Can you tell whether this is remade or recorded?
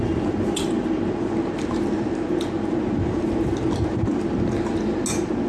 recorded